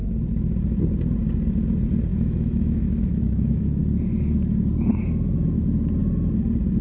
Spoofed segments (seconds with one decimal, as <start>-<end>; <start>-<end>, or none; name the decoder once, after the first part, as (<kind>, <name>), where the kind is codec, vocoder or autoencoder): 2.1-3.8 (autoencoder, DAC-VAE)